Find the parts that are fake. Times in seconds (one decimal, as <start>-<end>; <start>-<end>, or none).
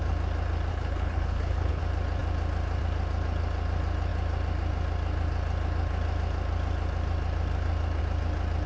0.7-1.8